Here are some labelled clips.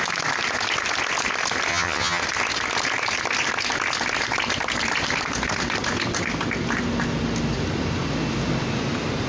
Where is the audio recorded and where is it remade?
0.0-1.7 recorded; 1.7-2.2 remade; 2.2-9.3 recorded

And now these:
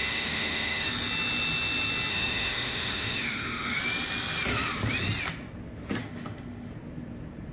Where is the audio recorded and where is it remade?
0.0-0.9 remade; 0.9-2.1 recorded; 2.1-3.8 remade; 3.8-6.0 recorded; 6.0-6.7 remade; 6.7-7.5 recorded

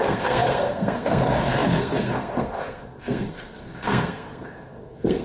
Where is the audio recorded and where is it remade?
0.0-5.2 remade

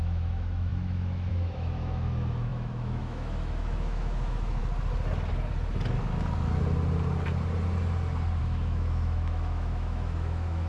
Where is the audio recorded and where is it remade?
0.0-4.6 remade; 4.6-8.4 recorded; 8.4-10.7 remade

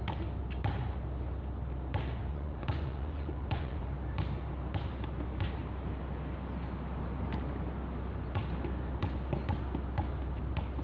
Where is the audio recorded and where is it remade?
0.0-2.3 recorded; 2.3-3.9 remade; 3.9-10.8 recorded

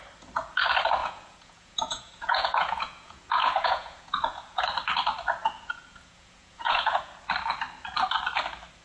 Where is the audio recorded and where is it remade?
0.0-1.0 recorded; 1.0-4.6 remade; 4.6-5.4 recorded; 5.4-7.2 remade; 7.2-8.8 recorded